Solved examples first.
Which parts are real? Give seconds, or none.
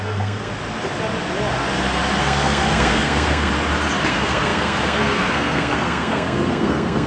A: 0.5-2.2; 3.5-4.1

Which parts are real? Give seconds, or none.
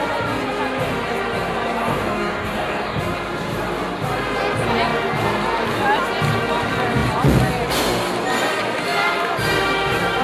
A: 0.0-1.9; 3.0-10.2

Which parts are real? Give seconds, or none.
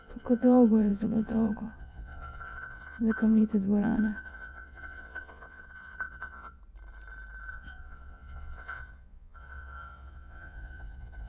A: 6.6-7.5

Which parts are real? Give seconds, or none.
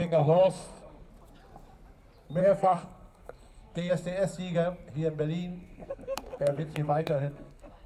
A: 1.1-2.4; 3.9-5.5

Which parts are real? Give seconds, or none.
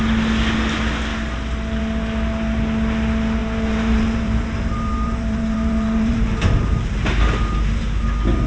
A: 0.0-3.4; 7.4-8.5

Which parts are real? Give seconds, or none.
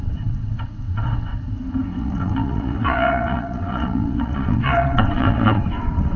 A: 1.3-2.0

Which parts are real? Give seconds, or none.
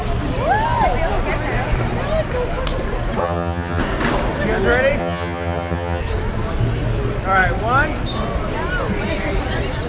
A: 0.0-3.2; 3.8-5.0; 6.0-9.9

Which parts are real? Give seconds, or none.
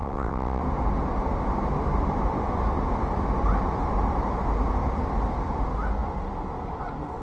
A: 0.6-7.2